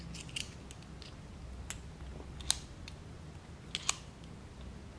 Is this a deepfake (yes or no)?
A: no